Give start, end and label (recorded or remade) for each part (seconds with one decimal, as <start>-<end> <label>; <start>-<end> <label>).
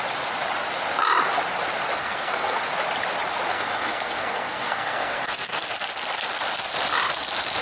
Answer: 0.0-2.0 recorded; 2.0-2.6 remade; 2.6-3.5 recorded; 3.5-5.6 remade; 5.6-7.6 recorded